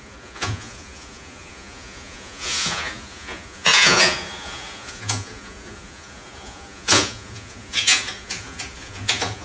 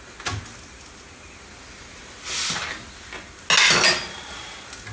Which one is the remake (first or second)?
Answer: first